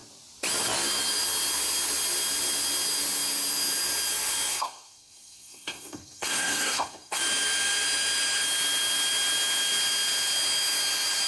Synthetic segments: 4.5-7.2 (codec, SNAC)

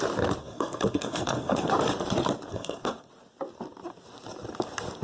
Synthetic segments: 0.4-1.7 (codec, SNAC); 2.5-3.1

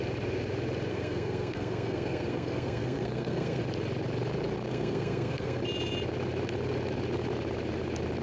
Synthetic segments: 0.9-3.6 (codec, SNAC); 4.7-5.6

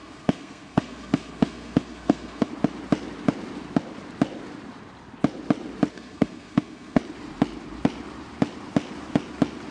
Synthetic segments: 0.0-2.5 (codec, SNAC); 5.9-7.0

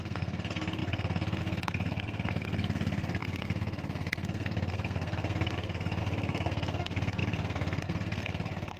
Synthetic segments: 0.0-8.8 (codec, SNAC)